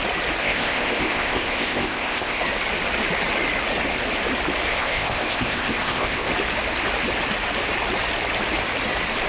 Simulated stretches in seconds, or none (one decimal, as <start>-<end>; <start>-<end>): 0.4-2.4; 4.7-6.3